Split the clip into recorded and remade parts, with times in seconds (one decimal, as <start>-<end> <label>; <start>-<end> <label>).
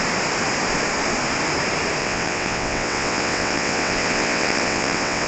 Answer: 0.0-2.0 recorded; 2.0-5.3 remade